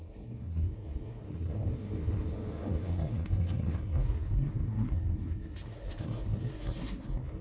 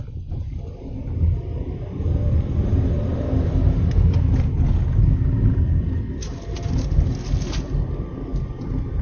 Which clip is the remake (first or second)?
first